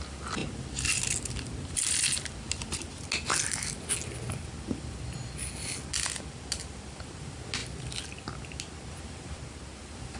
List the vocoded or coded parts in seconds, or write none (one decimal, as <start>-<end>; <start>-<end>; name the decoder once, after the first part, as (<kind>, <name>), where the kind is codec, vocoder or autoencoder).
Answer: none